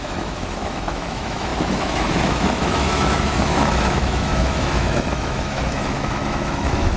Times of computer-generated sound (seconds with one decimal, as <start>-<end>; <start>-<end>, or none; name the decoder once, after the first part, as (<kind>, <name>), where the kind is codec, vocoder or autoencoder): 0.0-7.0 (autoencoder, DAC-VAE)